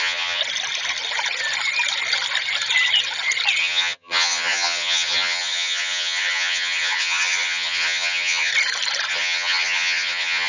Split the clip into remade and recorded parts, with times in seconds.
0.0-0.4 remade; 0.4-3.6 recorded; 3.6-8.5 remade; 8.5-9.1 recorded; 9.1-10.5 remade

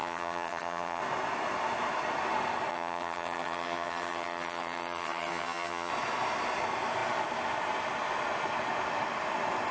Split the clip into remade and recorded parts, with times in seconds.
0.0-1.0 remade; 1.0-2.7 recorded; 2.7-5.9 remade; 5.9-9.7 recorded